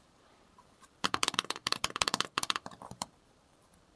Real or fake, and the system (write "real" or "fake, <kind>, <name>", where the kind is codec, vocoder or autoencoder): fake, vocoder, BigVGAN v2